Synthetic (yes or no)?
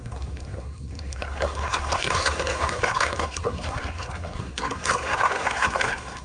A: yes